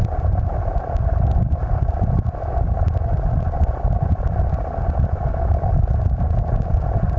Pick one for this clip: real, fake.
real